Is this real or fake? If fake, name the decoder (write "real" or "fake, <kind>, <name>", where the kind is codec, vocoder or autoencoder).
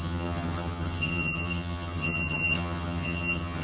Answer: fake, vocoder, HiFi-GAN